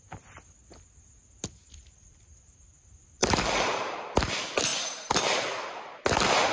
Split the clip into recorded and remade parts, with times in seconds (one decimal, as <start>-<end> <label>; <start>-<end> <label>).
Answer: 0.0-3.2 recorded; 3.2-4.0 remade; 4.0-6.5 recorded